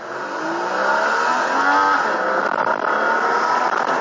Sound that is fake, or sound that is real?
real